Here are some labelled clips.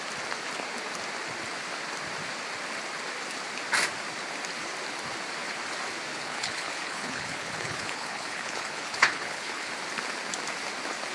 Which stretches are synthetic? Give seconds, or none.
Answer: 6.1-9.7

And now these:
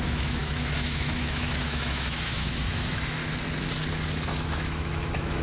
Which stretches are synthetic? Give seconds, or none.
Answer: 0.0-3.2; 4.1-5.4

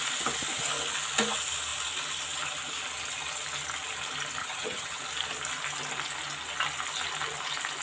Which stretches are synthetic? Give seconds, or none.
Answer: 4.4-5.0

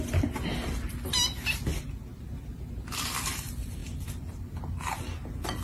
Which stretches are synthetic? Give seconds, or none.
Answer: none

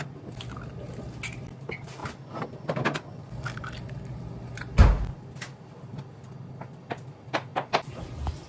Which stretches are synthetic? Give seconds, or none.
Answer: none

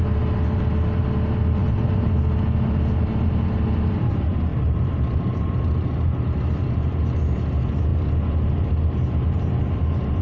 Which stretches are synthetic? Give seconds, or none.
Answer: 1.6-2.1; 4.5-5.5

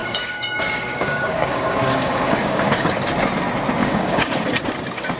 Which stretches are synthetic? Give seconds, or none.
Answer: 0.0-3.1; 3.8-4.6